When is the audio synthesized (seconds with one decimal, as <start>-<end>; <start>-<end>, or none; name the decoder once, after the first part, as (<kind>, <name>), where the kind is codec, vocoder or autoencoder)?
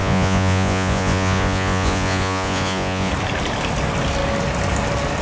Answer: 0.0-3.1 (vocoder, Vocos)